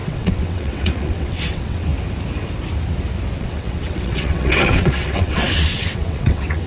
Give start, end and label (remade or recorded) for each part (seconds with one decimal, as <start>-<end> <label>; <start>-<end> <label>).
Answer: 0.0-1.9 remade; 1.9-3.4 recorded; 3.4-6.7 remade